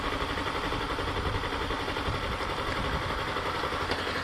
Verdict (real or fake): real